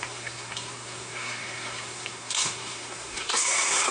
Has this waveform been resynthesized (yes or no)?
yes